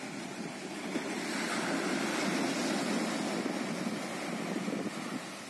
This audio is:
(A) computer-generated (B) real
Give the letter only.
B